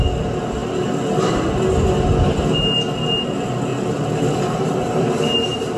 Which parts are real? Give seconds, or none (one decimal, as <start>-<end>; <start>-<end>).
0.0-3.7